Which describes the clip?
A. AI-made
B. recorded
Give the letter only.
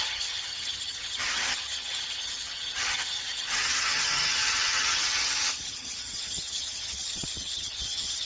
A